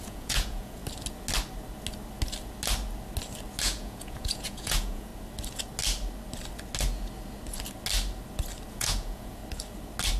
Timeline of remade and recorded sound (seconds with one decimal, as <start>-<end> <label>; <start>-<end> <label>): 0.0-0.8 remade; 0.8-3.6 recorded; 3.6-5.1 remade; 5.1-8.7 recorded; 8.7-9.4 remade; 9.4-10.2 recorded